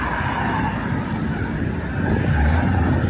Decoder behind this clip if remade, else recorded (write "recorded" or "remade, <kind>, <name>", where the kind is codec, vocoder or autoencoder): recorded